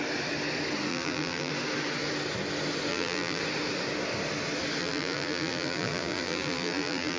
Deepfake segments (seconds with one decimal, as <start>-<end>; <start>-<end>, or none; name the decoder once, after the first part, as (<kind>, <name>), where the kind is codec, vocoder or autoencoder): 0.9-1.5 (vocoder, BigVGAN v2); 2.9-3.4; 4.8-7.2